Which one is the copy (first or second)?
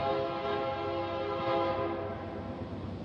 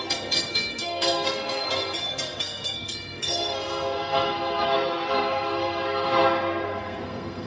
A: second